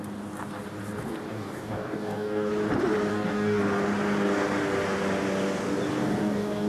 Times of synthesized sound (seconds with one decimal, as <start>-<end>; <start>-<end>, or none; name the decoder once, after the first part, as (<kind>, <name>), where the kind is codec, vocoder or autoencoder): 1.3-2.5 (codec, DAC); 3.1-3.6; 5.9-6.7